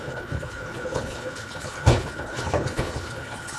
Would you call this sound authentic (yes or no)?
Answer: no